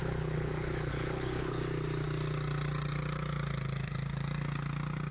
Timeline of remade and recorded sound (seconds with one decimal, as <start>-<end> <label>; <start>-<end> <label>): 0.0-1.6 remade; 1.6-5.1 recorded